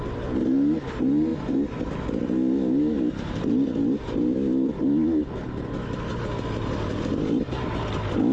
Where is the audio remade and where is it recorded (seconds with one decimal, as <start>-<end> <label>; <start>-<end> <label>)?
0.0-8.3 recorded